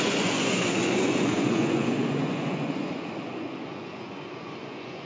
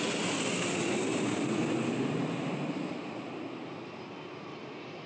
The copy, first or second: first